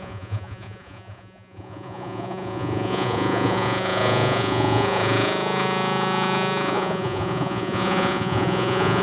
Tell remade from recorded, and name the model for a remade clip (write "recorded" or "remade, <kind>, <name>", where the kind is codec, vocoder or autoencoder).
remade, vocoder, Vocos